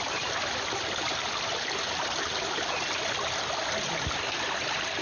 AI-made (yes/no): no